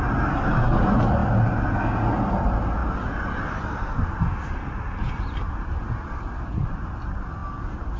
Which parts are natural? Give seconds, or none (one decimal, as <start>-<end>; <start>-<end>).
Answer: 0.0-8.0